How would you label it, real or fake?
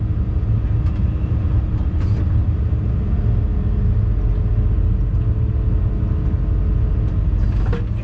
real